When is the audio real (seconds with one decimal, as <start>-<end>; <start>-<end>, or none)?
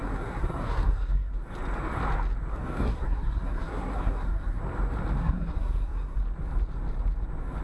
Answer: 1.3-2.5; 4.6-5.2; 6.2-7.6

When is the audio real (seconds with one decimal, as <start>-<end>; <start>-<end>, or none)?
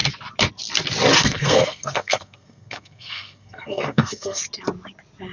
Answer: 0.0-1.2; 4.4-5.3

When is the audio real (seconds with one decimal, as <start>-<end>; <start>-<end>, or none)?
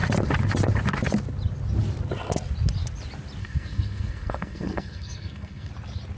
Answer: 0.0-3.4; 5.7-6.2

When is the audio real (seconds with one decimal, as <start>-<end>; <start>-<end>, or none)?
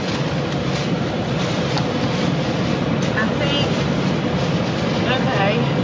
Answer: 0.0-5.8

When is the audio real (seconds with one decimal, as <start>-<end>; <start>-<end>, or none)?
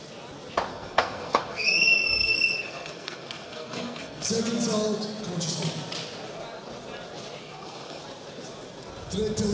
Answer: 0.0-0.7; 4.3-7.4; 8.0-9.5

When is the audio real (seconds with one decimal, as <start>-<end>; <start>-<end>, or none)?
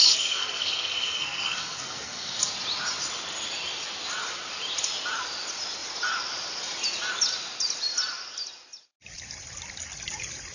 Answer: 2.4-10.5